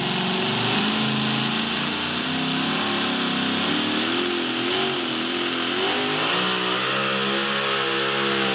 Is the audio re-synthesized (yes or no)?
no